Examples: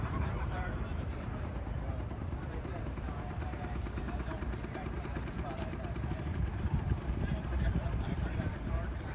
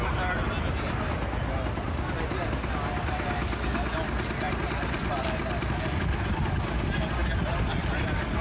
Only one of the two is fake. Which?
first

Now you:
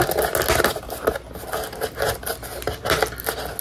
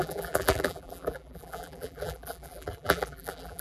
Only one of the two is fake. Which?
second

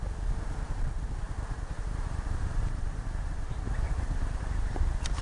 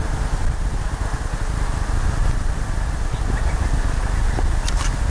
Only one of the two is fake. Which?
first